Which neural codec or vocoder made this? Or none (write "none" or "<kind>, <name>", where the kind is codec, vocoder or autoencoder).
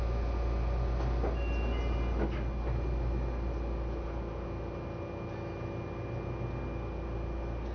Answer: none